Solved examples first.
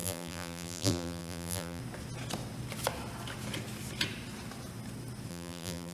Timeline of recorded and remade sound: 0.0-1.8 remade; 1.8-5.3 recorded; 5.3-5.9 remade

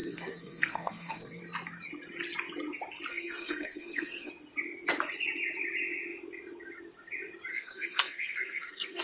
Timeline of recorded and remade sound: 0.0-1.4 remade; 1.4-3.1 recorded; 3.1-4.3 remade; 4.3-7.5 recorded; 7.5-9.0 remade

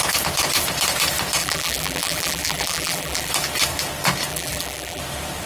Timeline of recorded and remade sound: 0.0-1.4 recorded; 1.4-3.3 remade; 3.3-4.3 recorded; 4.3-5.0 remade; 5.0-5.5 recorded